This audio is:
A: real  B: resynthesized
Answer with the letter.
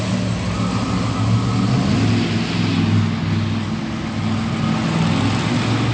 A